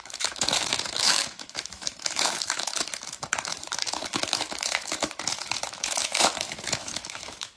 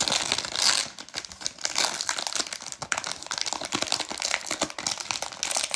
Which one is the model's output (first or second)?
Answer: first